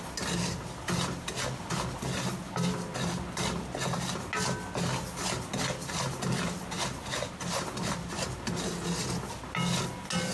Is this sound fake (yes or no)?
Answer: no